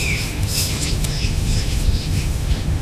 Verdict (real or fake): fake